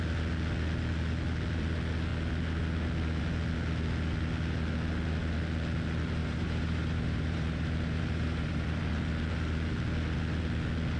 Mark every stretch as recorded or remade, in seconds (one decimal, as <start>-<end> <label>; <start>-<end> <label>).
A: 0.0-6.2 recorded; 6.2-8.8 remade; 8.8-11.0 recorded